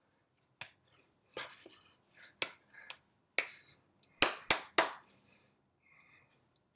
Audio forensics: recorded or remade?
recorded